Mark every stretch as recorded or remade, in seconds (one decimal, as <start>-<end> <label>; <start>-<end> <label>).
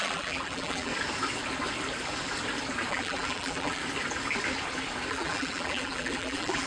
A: 0.0-0.9 remade; 0.9-2.9 recorded; 2.9-3.8 remade; 3.8-5.1 recorded; 5.1-6.7 remade